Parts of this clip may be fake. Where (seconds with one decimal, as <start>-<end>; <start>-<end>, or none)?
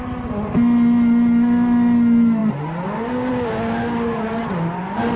none